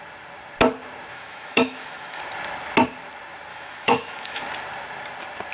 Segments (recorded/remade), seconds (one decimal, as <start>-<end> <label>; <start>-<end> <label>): 0.0-1.1 recorded; 1.1-2.2 remade; 2.2-3.5 recorded; 3.5-4.4 remade; 4.4-5.5 recorded